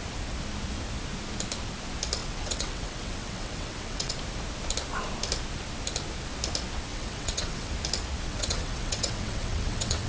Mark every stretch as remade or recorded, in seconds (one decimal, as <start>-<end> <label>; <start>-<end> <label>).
0.0-2.2 recorded; 2.2-4.1 remade; 4.1-6.9 recorded; 6.9-7.7 remade; 7.7-8.3 recorded; 8.3-10.1 remade